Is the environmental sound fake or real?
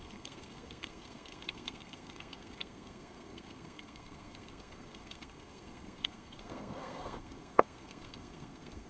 fake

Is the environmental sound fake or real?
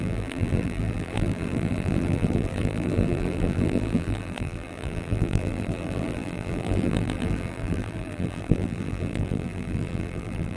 fake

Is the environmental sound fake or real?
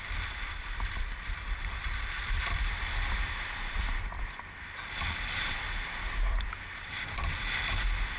fake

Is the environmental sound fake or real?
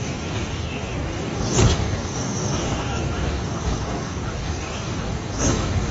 fake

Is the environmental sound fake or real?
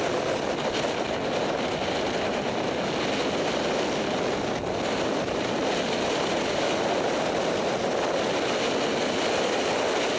real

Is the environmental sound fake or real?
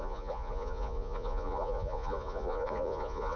fake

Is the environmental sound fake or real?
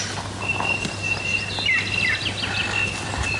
real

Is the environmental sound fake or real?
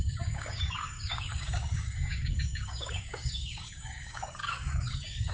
fake